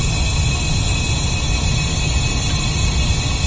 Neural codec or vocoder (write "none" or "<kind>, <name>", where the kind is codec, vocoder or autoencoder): none